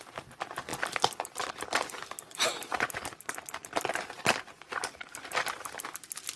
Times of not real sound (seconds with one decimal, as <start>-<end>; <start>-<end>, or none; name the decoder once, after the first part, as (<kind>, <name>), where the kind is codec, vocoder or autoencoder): none